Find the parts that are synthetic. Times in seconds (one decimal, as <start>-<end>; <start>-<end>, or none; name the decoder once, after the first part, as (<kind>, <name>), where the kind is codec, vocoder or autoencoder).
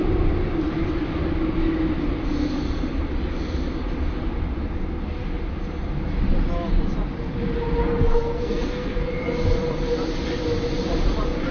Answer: 7.8-9.1 (codec, SNAC)